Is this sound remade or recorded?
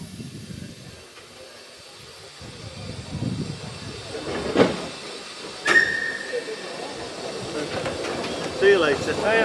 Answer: recorded